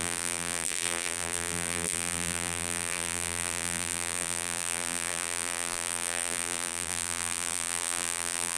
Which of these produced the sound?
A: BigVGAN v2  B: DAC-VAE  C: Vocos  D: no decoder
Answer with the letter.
A